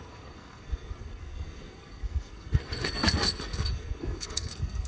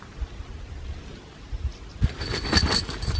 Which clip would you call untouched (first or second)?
second